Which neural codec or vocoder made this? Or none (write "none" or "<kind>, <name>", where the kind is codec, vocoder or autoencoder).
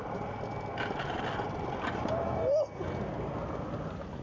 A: none